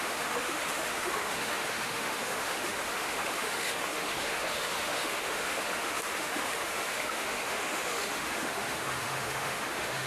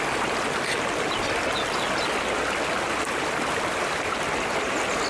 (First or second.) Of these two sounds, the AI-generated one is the first